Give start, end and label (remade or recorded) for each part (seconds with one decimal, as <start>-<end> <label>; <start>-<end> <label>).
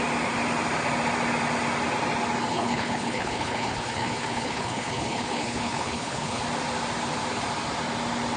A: 0.0-2.5 recorded; 2.5-6.4 remade; 6.4-8.4 recorded